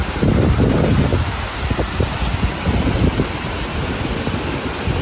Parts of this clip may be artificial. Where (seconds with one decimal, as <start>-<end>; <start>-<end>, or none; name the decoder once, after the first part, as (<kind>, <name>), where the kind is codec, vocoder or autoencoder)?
0.0-1.1 (vocoder, BigVGAN v2); 4.0-5.0